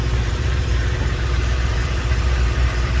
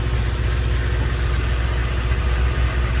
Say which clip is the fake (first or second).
first